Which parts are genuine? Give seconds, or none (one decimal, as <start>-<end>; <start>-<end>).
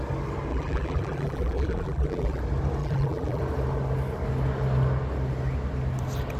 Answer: 0.0-0.5; 2.4-2.8; 3.4-6.4